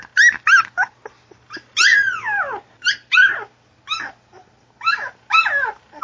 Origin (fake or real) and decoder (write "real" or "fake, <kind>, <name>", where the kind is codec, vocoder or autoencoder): real